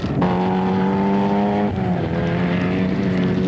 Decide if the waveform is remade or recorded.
recorded